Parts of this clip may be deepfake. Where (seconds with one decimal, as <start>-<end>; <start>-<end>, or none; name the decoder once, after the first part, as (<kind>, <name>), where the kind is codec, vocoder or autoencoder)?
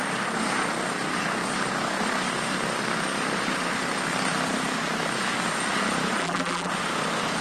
6.2-6.7 (vocoder, BigVGAN v2)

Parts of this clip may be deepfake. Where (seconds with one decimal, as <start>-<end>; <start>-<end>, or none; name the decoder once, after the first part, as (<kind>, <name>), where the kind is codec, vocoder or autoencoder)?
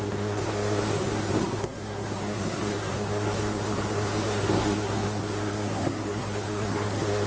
0.0-7.3 (codec, SNAC)